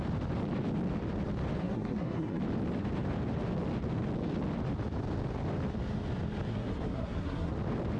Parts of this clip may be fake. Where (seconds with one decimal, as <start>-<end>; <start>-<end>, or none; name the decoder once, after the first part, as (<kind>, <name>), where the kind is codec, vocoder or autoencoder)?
1.6-2.4 (codec, SNAC); 6.5-7.5